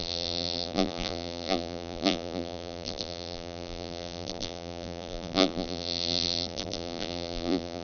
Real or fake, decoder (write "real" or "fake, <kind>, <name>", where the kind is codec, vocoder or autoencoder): fake, vocoder, BigVGAN v2